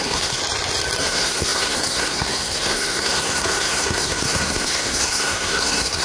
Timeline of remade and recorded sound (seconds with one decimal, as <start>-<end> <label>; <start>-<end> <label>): 0.0-0.4 remade; 0.4-1.0 recorded; 1.0-6.0 remade